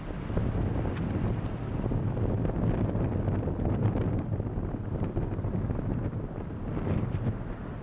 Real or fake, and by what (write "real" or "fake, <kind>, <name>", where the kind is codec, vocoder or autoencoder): real